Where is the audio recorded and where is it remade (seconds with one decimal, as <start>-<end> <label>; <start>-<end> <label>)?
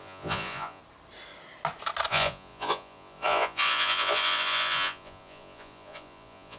0.0-0.8 remade; 0.8-2.1 recorded; 2.1-6.6 remade